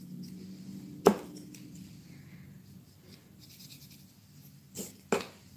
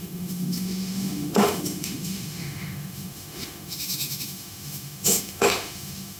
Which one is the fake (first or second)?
second